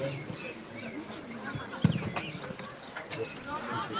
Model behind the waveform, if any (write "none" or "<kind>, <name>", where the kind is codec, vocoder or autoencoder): none